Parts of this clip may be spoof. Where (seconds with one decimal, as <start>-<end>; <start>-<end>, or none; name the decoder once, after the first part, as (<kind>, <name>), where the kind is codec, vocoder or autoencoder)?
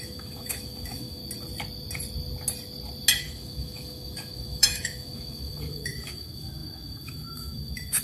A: 0.0-1.2 (autoencoder, DAC-VAE); 3.2-8.0